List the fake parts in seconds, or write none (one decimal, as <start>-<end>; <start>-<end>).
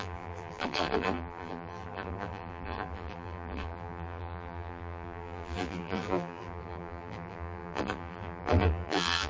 0.0-9.3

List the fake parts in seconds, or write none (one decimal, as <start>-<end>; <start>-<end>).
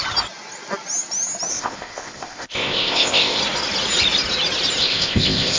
1.5-3.4; 4.8-5.6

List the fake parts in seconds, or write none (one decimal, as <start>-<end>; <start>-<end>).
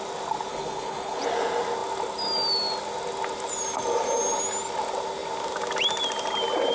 0.5-1.2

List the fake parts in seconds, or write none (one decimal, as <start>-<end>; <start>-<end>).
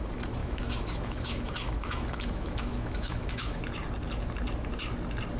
0.4-3.6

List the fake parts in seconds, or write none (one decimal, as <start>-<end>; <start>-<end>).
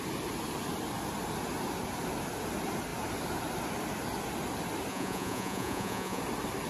4.9-6.2